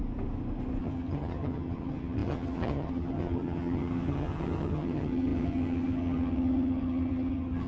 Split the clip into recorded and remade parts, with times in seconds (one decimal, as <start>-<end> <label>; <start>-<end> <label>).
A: 0.0-0.8 recorded; 0.8-7.7 remade

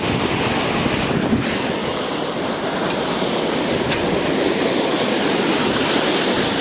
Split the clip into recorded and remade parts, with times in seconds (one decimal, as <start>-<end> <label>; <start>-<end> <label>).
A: 0.0-6.6 recorded